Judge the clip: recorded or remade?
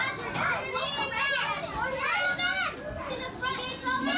recorded